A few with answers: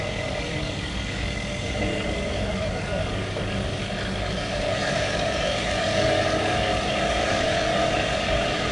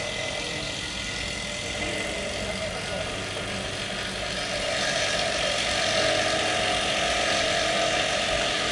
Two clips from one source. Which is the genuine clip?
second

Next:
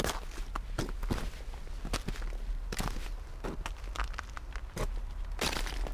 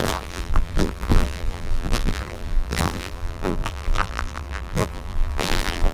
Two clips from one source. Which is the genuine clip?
first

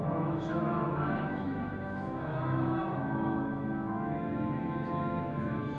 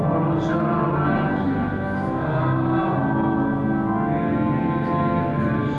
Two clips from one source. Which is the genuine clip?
second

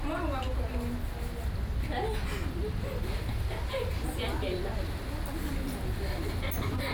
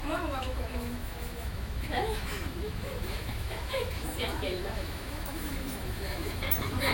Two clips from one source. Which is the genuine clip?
first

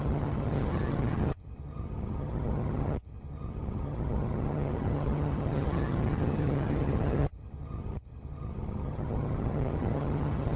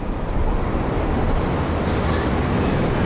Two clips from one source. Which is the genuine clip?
second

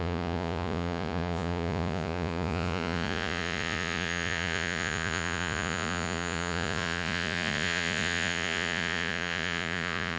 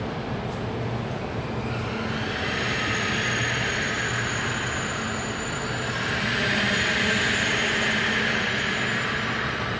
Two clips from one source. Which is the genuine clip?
second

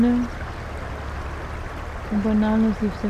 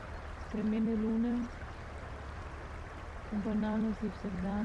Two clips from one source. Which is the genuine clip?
first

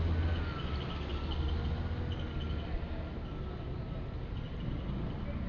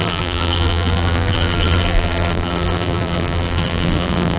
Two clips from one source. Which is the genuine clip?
first